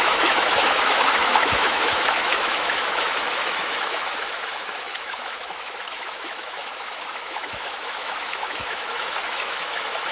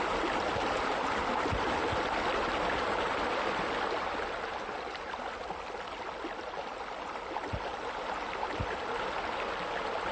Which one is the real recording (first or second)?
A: second